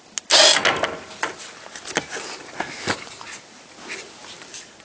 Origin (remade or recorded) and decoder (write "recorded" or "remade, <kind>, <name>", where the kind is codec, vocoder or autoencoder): recorded